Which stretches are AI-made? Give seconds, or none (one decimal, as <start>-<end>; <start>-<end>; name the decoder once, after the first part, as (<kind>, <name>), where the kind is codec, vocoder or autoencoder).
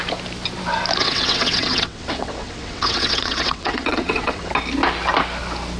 1.0-4.5 (vocoder, WaveNeXt)